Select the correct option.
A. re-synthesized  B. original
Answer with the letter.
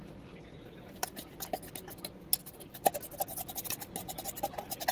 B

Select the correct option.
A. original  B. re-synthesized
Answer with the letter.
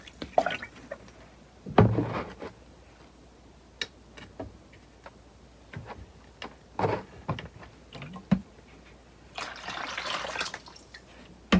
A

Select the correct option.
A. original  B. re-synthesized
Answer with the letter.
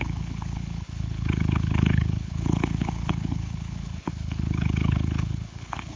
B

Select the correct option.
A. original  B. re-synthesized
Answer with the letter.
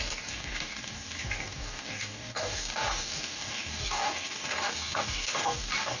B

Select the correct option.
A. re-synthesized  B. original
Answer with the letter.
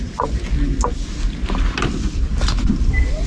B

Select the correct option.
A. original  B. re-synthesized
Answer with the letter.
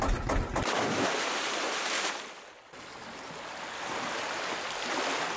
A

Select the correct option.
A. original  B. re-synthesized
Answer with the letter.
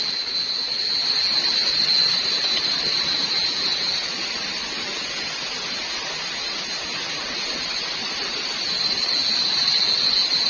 A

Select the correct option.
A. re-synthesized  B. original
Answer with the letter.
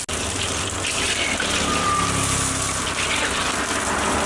B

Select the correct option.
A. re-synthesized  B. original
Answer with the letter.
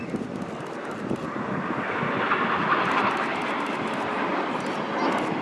B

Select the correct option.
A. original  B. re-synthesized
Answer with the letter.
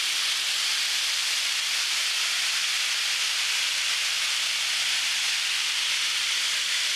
A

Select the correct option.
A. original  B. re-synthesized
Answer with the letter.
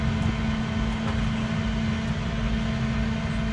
A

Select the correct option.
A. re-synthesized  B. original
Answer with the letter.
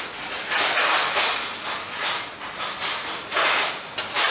B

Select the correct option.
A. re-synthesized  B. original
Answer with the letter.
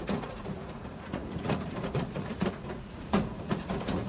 A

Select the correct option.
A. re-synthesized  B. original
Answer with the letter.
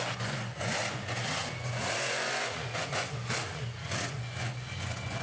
A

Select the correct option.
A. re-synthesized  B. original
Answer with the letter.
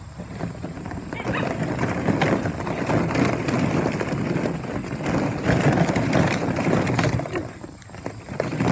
B